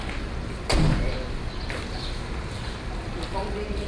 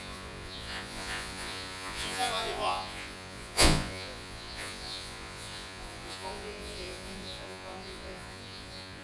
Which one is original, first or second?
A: first